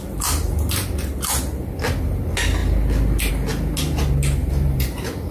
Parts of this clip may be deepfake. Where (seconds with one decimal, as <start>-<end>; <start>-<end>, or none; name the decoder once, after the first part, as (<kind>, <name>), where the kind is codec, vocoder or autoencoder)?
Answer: 4.4-5.3 (vocoder, BigVGAN v2)